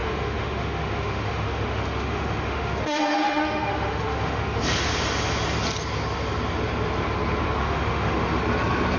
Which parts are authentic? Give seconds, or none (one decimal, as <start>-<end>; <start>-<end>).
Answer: 4.6-7.6; 8.4-9.0